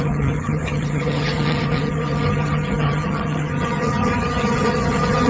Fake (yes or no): yes